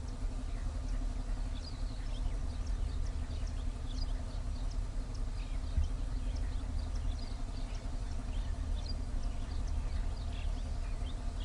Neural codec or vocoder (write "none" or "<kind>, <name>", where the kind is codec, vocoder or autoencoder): none